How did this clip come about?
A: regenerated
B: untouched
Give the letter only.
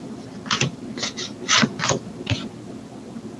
B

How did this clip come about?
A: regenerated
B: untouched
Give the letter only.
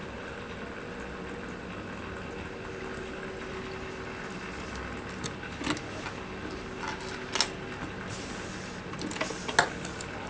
B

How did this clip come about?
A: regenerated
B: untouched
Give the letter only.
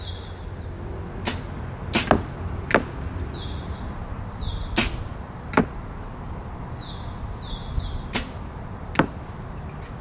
B